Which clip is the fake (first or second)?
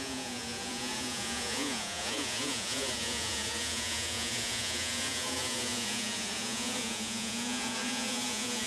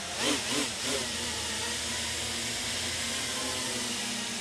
first